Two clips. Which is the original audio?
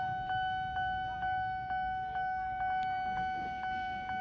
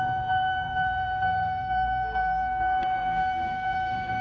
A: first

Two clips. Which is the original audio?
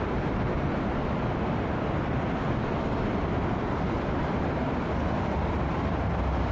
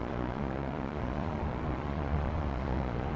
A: first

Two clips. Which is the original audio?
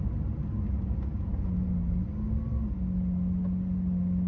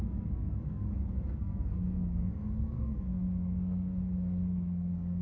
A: first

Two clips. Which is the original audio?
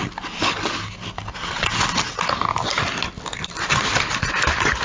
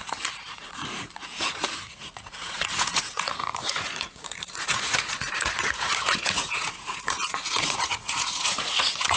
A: first